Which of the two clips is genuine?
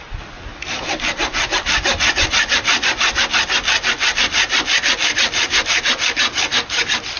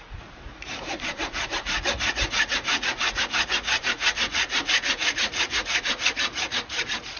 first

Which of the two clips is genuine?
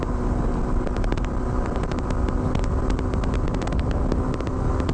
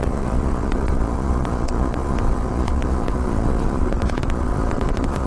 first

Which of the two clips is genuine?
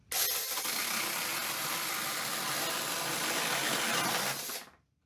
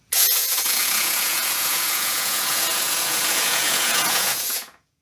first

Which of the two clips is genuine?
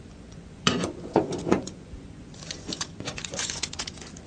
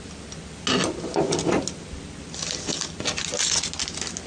second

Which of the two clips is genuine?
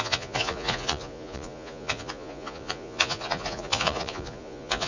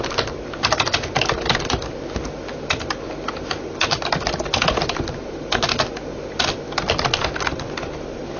second